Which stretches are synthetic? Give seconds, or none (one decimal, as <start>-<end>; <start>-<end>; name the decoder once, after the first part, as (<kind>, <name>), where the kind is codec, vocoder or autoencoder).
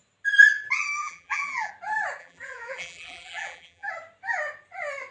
1.0-1.7 (vocoder, BigVGAN v2); 2.2-3.9